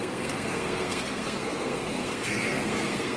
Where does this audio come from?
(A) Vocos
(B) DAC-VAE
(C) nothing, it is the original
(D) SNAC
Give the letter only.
D